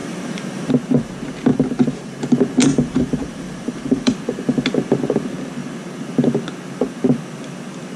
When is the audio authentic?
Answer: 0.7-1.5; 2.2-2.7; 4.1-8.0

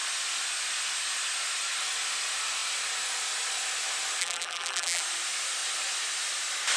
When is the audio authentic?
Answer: 0.0-4.2; 5.0-6.8